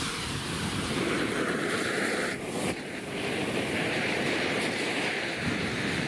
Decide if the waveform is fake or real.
fake